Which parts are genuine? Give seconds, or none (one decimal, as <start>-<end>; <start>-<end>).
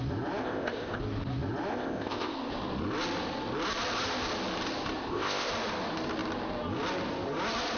0.0-0.4; 1.0-1.7; 2.5-5.0; 5.5-7.8